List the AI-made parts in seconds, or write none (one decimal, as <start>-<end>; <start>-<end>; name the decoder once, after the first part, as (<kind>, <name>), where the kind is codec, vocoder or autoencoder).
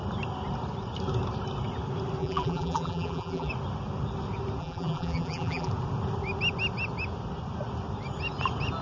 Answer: 2.2-3.5 (vocoder, BigVGAN v2); 4.6-5.7